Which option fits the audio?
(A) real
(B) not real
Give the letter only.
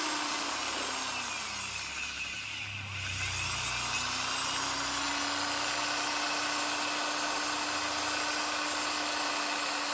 A